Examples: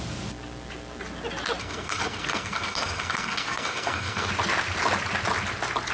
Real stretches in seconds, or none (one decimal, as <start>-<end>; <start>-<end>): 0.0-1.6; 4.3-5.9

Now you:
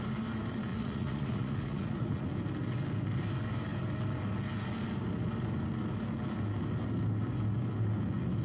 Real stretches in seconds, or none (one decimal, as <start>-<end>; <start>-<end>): 0.0-0.7; 2.3-8.4

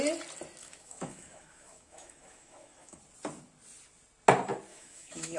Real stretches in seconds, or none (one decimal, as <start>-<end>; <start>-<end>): 0.0-0.6; 3.0-4.7